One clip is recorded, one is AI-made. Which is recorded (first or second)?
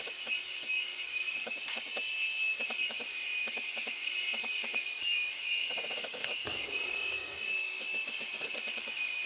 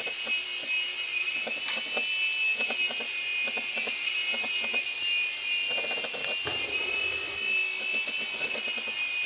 second